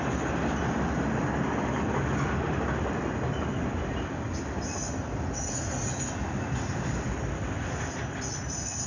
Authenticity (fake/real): real